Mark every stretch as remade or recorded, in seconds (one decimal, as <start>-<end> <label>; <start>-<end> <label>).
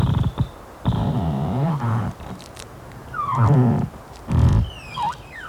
0.0-3.3 remade; 3.3-3.9 recorded; 3.9-4.5 remade; 4.5-5.5 recorded